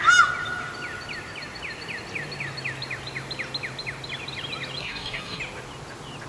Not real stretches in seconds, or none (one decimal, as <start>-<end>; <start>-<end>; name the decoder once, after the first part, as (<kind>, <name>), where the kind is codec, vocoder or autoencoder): 4.8-5.4 (codec, SNAC)